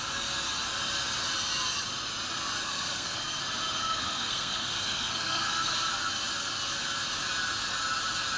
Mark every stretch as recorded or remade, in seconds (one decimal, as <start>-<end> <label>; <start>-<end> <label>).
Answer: 0.0-2.6 recorded; 2.6-3.4 remade; 3.4-3.8 recorded; 3.8-5.7 remade; 5.7-8.4 recorded